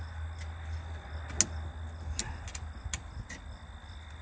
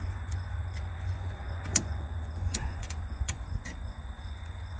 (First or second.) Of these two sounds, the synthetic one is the second